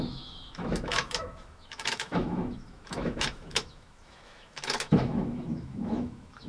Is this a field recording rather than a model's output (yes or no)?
no